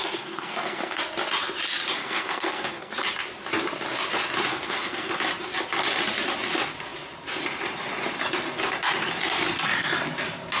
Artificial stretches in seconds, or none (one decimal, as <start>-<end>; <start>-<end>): 0.0-1.0; 2.0-2.9; 4.5-5.1